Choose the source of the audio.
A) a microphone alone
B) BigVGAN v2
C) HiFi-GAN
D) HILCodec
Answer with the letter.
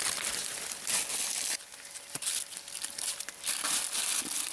A